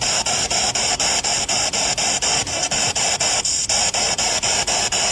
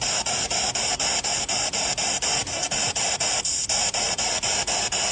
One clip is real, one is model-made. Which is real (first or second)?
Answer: second